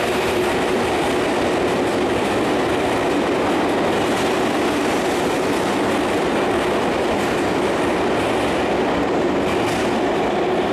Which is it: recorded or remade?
recorded